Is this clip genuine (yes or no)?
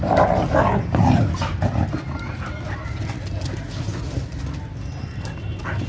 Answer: yes